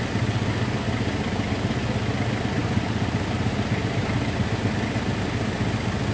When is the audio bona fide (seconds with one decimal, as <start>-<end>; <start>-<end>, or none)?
0.0-2.6; 4.4-6.1

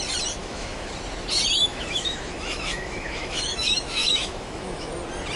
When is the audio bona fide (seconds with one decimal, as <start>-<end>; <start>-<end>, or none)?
0.0-0.4; 0.9-1.7; 4.9-5.4

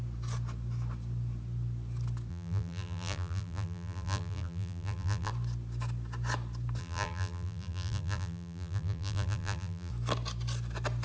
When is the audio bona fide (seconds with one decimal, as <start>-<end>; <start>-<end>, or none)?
0.0-2.3; 5.3-6.8; 9.9-11.0

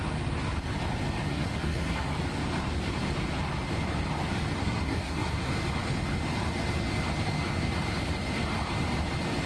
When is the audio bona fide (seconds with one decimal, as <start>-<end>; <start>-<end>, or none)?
0.0-1.3; 2.1-4.6; 5.5-9.5

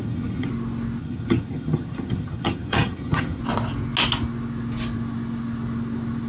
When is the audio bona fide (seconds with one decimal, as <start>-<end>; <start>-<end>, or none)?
0.5-1.0; 3.4-6.3